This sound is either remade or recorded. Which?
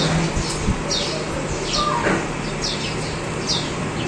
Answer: recorded